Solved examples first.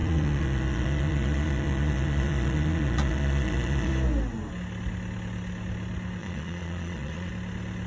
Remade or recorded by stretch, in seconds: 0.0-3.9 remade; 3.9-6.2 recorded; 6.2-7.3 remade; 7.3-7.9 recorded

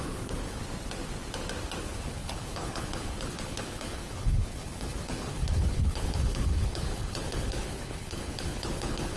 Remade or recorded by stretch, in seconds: 0.0-0.6 remade; 0.6-1.8 recorded; 1.8-9.2 remade

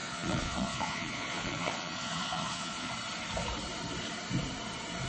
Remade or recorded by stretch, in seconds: 0.0-2.9 remade; 2.9-5.1 recorded

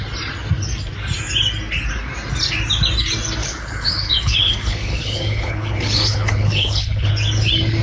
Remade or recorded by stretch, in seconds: 0.0-3.4 recorded; 3.4-7.1 remade; 7.1-7.8 recorded

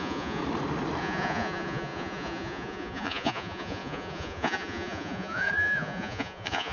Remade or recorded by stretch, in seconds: 0.0-0.4 remade; 0.4-1.0 recorded; 1.0-6.7 remade

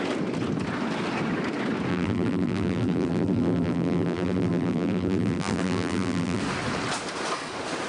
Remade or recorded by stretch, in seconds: 0.0-1.9 recorded; 1.9-6.4 remade; 6.4-7.9 recorded

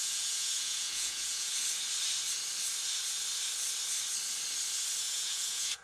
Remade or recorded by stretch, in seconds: 0.0-1.5 remade; 1.5-5.0 recorded; 5.0-5.8 remade

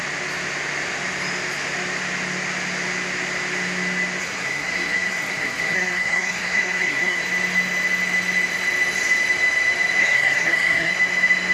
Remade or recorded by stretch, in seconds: 0.0-4.2 recorded; 4.2-7.2 remade; 7.2-10.0 recorded; 10.0-10.9 remade; 10.9-11.5 recorded